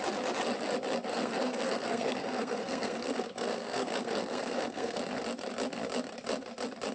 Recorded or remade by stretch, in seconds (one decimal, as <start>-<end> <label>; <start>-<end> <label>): 0.0-1.1 recorded; 1.1-5.0 remade; 5.0-6.9 recorded